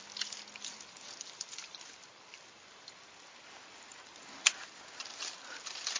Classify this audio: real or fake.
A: real